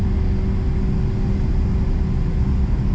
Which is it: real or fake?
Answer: real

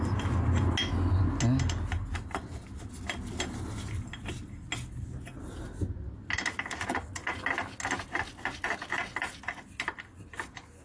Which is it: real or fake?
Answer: real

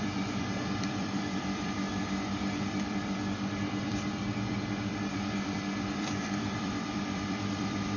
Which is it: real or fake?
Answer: fake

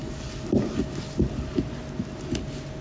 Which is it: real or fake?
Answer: real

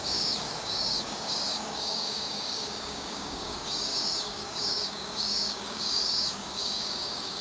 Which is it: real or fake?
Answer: fake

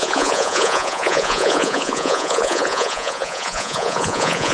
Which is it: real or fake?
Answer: fake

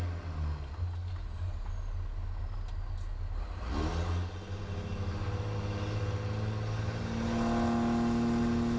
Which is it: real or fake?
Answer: real